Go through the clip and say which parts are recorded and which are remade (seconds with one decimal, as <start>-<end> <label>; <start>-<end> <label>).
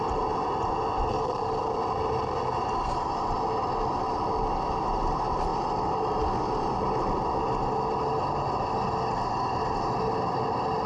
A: 0.0-10.9 recorded